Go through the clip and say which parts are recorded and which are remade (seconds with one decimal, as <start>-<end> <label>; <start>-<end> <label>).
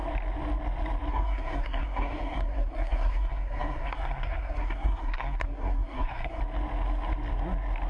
0.0-1.1 recorded; 1.1-6.4 remade; 6.4-7.9 recorded